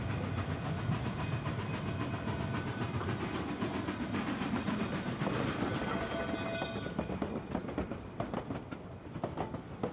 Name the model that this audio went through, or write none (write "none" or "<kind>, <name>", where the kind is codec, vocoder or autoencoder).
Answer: none